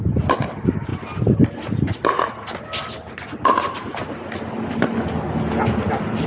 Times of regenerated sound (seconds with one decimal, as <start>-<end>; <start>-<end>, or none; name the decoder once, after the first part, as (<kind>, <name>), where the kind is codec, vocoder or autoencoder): none